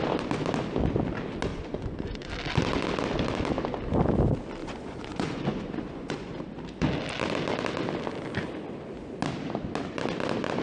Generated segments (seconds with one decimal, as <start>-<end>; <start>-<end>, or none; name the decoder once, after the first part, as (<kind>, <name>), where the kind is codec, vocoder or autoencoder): 1.5-2.3 (vocoder, Vocos); 4.6-6.4